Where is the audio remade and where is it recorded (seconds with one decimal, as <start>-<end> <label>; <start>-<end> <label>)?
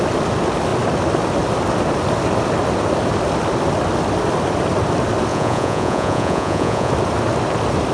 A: 0.0-5.3 recorded; 5.3-6.9 remade; 6.9-7.9 recorded